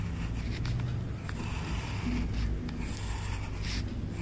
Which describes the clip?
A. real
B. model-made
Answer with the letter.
A